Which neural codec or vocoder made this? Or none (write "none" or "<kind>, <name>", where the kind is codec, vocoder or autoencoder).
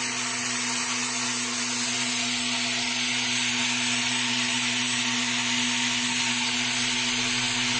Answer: none